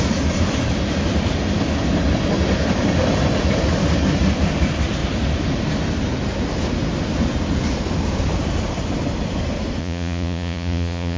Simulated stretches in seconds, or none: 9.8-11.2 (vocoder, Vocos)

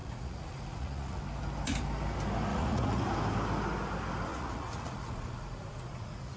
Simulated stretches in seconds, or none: 0.0-1.2 (vocoder, Vocos); 2.5-3.0; 4.3-6.4

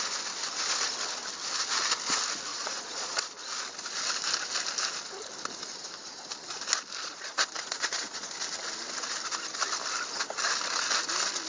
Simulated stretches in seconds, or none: 2.5-3.3 (vocoder, Vocos); 7.0-8.3

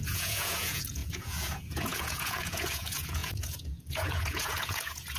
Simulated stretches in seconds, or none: 0.0-5.2 (vocoder, Vocos)

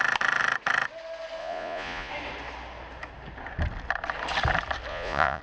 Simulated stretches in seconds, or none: 1.4-2.1 (vocoder, Vocos); 4.9-5.4

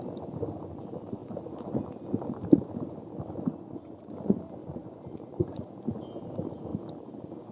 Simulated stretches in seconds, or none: 3.5-4.1 (vocoder, Vocos); 4.6-5.8

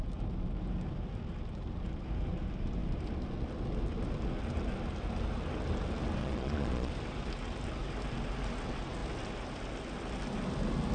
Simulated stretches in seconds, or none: 6.2-6.9 (vocoder, Vocos)